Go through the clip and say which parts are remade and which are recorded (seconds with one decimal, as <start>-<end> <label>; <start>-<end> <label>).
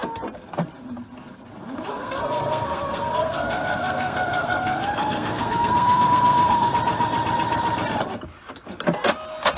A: 0.0-1.9 recorded; 1.9-6.7 remade; 6.7-9.6 recorded